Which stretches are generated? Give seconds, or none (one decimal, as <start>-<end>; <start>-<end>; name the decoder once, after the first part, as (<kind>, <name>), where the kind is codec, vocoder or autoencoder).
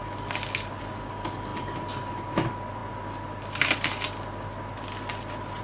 none